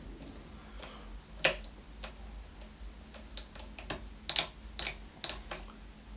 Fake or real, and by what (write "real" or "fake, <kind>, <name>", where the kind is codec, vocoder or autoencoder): real